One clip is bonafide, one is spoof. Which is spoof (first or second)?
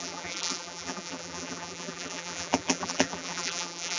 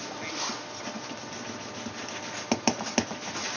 first